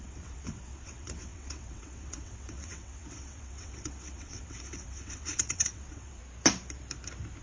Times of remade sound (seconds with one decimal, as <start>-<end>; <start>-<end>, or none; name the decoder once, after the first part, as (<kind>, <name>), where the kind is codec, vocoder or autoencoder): 0.0-6.2 (vocoder, WaveNeXt)